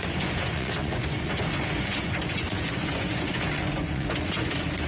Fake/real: fake